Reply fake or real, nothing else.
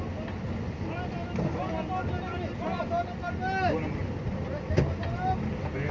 real